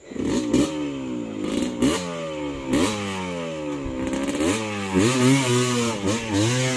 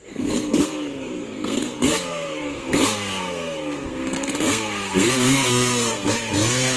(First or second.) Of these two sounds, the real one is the first